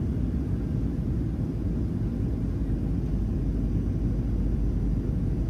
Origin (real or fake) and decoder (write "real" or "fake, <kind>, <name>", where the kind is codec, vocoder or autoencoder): real